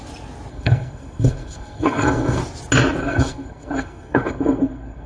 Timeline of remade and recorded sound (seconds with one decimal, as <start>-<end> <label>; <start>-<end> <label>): 0.0-0.5 recorded; 0.5-2.4 remade; 2.4-3.0 recorded; 3.0-5.1 remade